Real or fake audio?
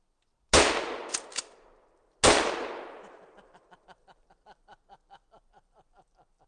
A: real